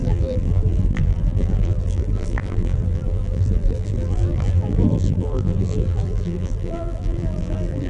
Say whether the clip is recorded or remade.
remade